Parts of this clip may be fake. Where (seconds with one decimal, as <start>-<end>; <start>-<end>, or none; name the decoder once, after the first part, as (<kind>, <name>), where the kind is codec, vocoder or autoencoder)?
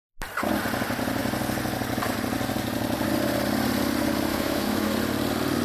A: 4.3-4.9 (autoencoder, DAC-VAE)